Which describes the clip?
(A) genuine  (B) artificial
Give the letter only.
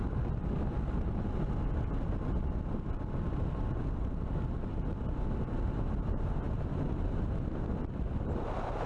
A